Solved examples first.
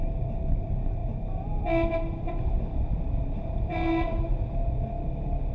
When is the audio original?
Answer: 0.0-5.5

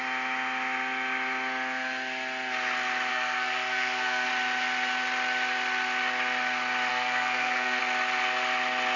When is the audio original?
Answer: 0.0-3.1; 4.3-6.9; 7.8-9.0

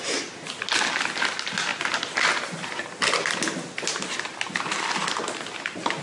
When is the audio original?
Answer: 0.0-6.0

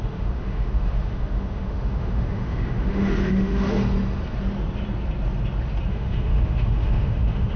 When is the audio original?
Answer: 3.8-5.9